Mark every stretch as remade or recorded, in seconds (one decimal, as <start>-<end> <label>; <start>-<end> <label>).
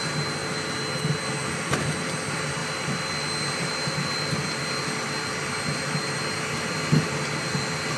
0.0-8.0 recorded